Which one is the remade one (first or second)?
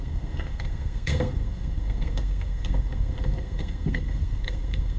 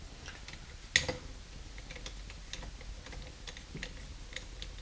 first